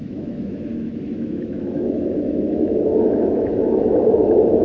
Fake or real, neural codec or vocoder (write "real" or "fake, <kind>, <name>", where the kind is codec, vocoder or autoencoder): fake, autoencoder, DAC-VAE